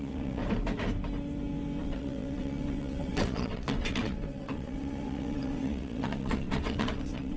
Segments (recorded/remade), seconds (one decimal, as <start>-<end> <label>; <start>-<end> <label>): 0.0-0.4 remade; 0.4-1.8 recorded; 1.8-7.4 remade